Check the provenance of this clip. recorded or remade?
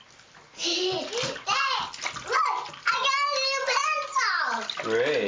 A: recorded